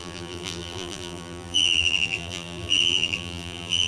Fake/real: fake